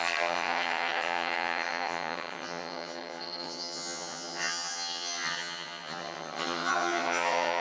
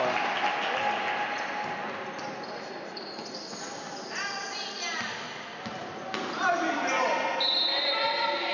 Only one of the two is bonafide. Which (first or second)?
second